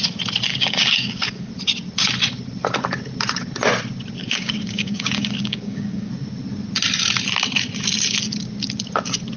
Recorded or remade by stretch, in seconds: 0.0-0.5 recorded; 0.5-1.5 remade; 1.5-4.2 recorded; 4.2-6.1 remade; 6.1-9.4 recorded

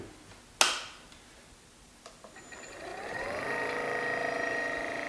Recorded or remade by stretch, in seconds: 0.0-5.1 recorded